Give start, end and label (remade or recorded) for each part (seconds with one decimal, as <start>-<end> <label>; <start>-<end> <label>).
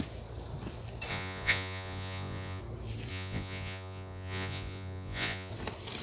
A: 0.0-1.1 recorded; 1.1-2.6 remade; 2.6-3.1 recorded; 3.1-5.5 remade; 5.5-6.0 recorded